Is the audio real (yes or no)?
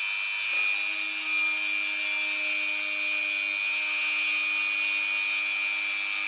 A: yes